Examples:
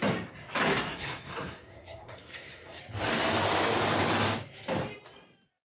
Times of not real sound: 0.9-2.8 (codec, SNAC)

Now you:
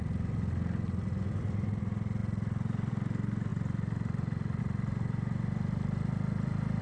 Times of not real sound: none

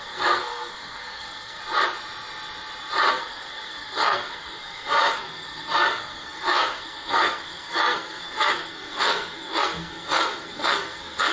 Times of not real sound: 0.0-1.6 (codec, SNAC); 3.1-11.3

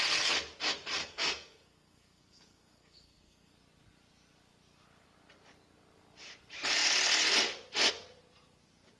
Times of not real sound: 1.0-3.5 (codec, SNAC)

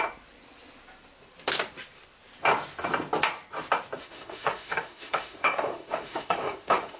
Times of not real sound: 4.0-7.0 (autoencoder, DAC-VAE)

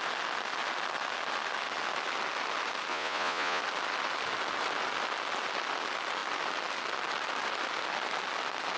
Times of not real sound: 2.9-3.6 (vocoder, Vocos)

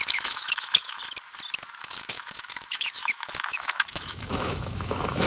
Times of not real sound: 0.0-1.0 (autoencoder, DAC-VAE); 1.8-5.3